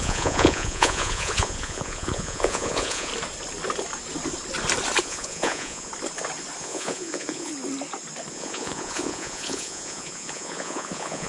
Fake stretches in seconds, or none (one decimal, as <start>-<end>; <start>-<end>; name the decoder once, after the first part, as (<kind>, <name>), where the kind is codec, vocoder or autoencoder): 0.0-3.1 (vocoder, Vocos); 5.0-5.9; 6.6-7.5; 8.3-11.3